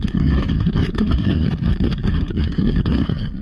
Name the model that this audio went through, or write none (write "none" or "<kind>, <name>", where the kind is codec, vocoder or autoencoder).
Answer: codec, SNAC